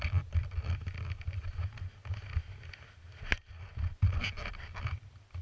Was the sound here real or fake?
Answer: real